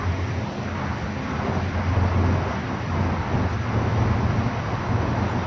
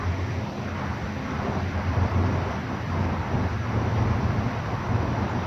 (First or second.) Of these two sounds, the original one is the first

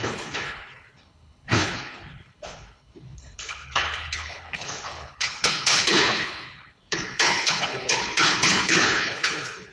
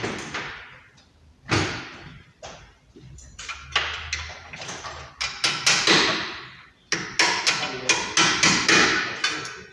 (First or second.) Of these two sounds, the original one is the second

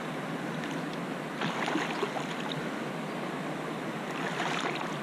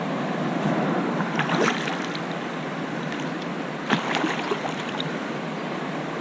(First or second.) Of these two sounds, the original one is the first